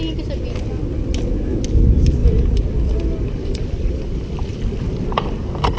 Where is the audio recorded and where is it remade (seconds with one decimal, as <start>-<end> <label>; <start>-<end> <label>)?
0.0-2.2 recorded; 2.2-5.8 remade